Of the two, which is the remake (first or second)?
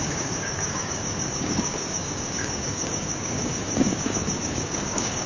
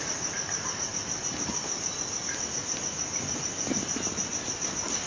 first